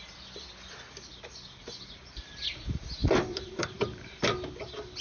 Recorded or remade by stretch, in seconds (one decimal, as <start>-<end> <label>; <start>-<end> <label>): 0.0-3.0 recorded; 3.0-3.8 remade; 3.8-5.0 recorded